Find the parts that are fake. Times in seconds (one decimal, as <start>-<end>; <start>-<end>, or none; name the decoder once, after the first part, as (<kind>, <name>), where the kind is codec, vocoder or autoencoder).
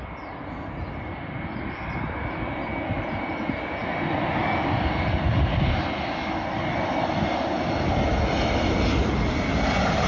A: none